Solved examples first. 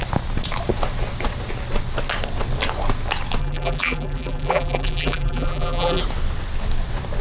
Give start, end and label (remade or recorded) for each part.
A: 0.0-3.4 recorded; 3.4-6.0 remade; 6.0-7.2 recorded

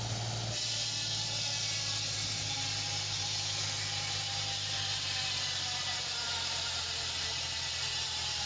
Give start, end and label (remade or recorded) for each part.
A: 0.0-8.5 recorded

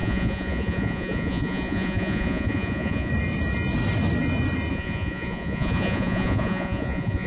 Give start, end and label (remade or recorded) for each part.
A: 0.0-3.1 remade; 3.1-4.7 recorded; 4.7-7.3 remade

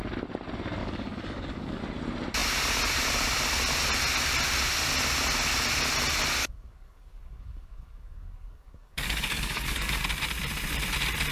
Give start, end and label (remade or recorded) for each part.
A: 0.0-0.8 recorded; 0.8-1.8 remade; 1.8-6.4 recorded; 6.4-10.0 remade; 10.0-11.3 recorded